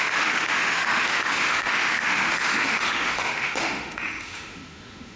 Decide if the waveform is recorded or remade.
remade